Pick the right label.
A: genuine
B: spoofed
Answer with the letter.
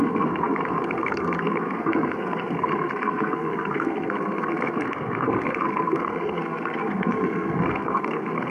B